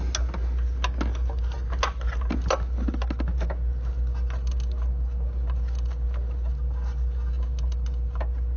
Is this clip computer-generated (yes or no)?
no